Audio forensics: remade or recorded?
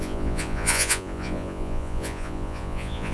remade